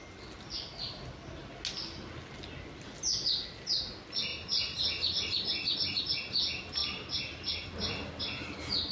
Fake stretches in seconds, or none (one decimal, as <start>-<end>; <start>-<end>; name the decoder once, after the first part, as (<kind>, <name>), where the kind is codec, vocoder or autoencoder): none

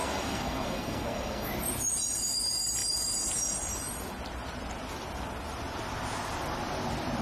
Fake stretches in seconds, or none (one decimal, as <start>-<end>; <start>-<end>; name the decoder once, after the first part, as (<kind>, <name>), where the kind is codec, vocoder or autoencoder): 0.0-1.5 (codec, SNAC)

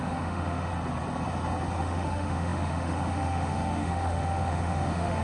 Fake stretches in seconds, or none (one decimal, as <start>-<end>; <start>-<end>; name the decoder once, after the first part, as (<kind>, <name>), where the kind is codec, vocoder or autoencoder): 0.0-0.7 (autoencoder, DAC-VAE); 1.8-5.2